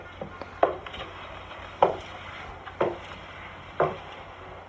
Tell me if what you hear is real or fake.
real